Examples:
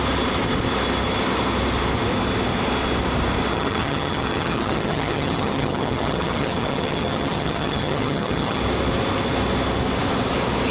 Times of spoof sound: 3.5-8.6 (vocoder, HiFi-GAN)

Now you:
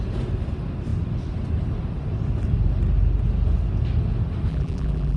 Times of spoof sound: 4.5-5.2 (vocoder, BigVGAN v2)

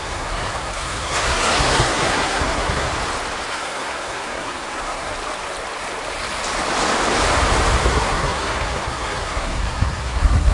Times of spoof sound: 0.0-2.9 (codec, SNAC); 3.5-5.1; 7.9-10.5

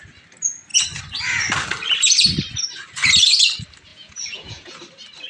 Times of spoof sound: 3.9-4.8 (vocoder, Vocos)

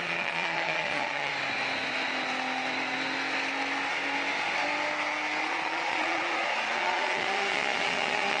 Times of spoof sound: 0.0-1.3 (vocoder, Vocos); 5.4-8.4

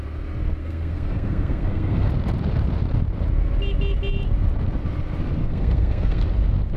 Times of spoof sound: 0.6-2.1 (codec, SNAC); 5.4-6.2